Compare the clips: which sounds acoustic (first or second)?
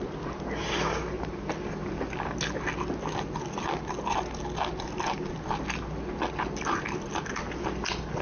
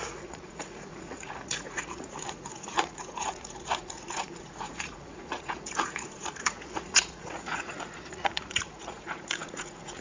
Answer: first